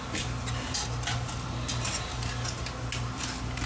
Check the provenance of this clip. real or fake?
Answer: real